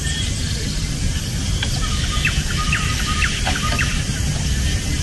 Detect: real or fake real